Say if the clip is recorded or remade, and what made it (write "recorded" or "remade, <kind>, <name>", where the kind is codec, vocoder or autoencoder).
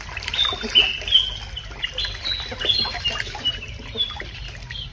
recorded